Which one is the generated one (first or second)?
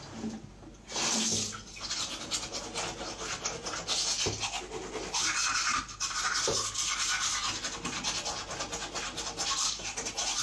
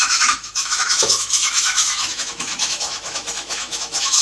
second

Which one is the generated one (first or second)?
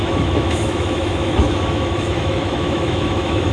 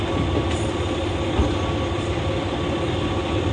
first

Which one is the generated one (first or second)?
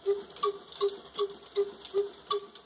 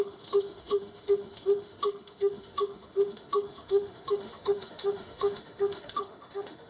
second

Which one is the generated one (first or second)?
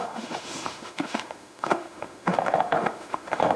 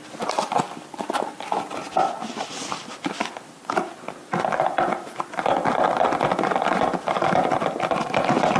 first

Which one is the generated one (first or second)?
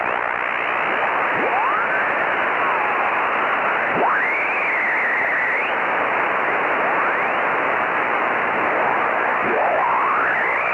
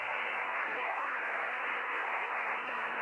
second